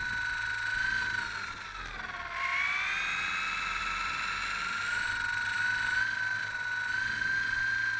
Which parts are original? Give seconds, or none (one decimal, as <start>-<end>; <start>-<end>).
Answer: 0.0-8.0